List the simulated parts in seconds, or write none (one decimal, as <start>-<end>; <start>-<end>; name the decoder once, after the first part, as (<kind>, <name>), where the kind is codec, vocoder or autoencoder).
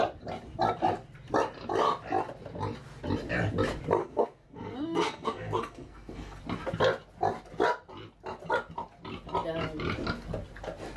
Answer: 4.0-6.4 (codec, SNAC)